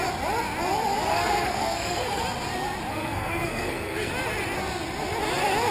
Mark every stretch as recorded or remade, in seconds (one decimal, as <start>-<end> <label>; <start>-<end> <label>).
0.0-1.1 recorded; 1.1-2.2 remade; 2.2-2.9 recorded; 2.9-4.1 remade; 4.1-5.7 recorded